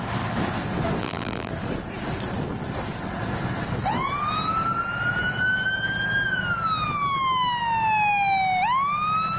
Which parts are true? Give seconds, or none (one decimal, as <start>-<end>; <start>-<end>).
0.0-1.0; 1.5-9.4